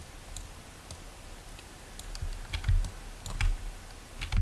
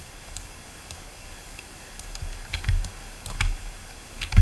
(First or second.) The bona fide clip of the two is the first